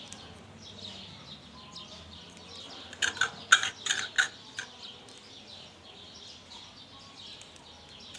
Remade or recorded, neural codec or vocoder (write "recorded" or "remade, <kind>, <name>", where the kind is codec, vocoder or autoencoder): recorded